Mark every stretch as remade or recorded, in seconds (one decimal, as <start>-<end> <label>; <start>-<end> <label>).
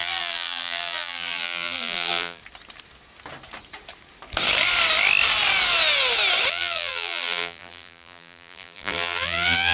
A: 0.0-2.4 remade; 2.4-6.5 recorded; 6.5-9.7 remade